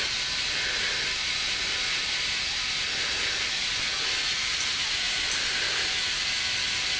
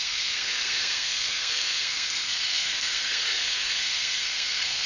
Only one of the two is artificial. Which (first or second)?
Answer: second